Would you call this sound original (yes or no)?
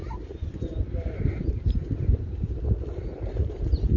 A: no